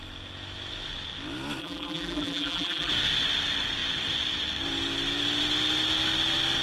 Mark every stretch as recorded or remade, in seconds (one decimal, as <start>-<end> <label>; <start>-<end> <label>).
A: 0.0-1.6 recorded; 1.6-2.9 remade; 2.9-6.6 recorded